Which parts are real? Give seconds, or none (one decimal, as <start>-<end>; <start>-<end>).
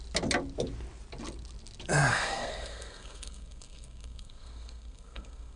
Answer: 0.0-2.1